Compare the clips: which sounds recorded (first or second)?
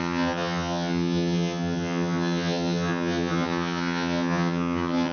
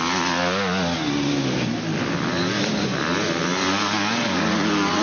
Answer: second